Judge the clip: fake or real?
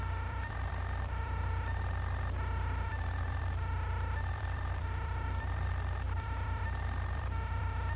fake